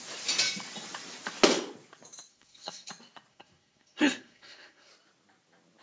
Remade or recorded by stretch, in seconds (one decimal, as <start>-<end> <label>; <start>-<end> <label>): 0.0-2.3 recorded; 2.3-2.9 remade; 2.9-3.3 recorded; 3.3-4.9 remade; 4.9-5.8 recorded